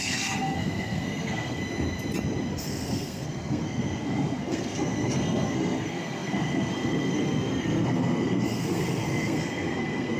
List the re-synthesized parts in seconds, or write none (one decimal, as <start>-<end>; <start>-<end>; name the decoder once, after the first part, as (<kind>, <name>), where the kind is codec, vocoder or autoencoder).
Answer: 0.0-1.6 (codec, SNAC); 2.5-10.2